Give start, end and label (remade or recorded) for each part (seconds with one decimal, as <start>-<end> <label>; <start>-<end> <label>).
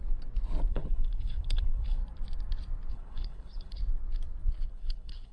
0.0-0.7 recorded; 0.7-2.0 remade; 2.0-2.9 recorded; 2.9-3.8 remade; 3.8-4.7 recorded; 4.7-5.3 remade